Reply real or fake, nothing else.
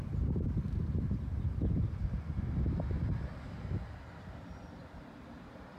real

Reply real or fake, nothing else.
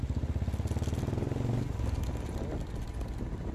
real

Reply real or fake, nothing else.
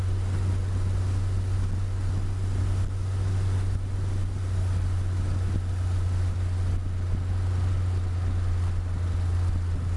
real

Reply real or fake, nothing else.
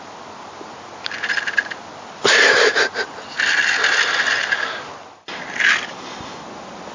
real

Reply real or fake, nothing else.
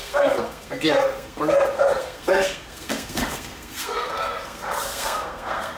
fake